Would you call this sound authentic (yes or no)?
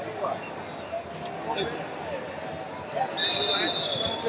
yes